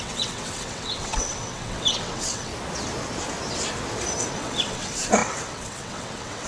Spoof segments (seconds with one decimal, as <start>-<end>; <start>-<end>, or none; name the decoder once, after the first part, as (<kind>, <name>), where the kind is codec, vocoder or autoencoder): 0.0-2.5 (vocoder, WaveNeXt); 4.3-6.5